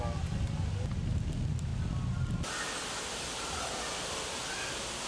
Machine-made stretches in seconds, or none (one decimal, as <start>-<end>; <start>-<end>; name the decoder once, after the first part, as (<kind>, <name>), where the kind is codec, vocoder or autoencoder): none